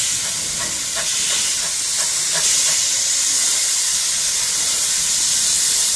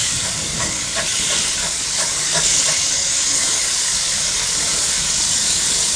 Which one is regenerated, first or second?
second